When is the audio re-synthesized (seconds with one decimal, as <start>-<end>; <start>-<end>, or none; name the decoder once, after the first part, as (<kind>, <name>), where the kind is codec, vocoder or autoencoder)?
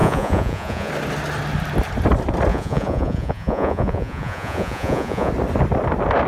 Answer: 0.0-0.9 (vocoder, Vocos); 2.5-5.3